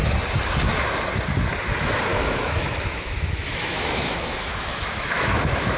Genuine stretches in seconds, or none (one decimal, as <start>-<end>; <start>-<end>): 0.0-2.1